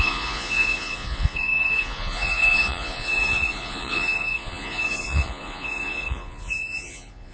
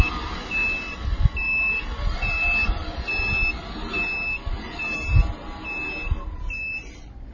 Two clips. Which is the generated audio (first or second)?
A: first